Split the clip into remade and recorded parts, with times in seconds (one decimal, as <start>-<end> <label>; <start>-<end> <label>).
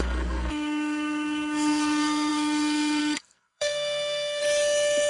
0.0-4.4 remade; 4.4-5.1 recorded